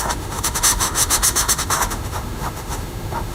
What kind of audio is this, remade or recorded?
remade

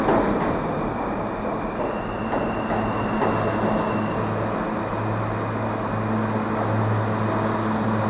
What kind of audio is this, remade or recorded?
recorded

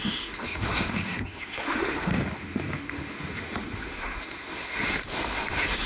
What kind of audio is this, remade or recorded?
remade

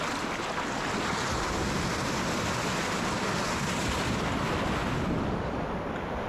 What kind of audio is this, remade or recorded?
recorded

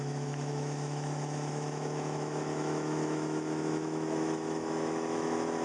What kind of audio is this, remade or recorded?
remade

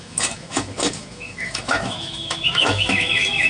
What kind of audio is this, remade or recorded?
remade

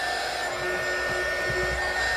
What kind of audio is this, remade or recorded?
recorded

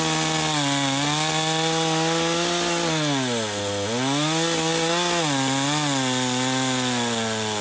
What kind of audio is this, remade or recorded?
recorded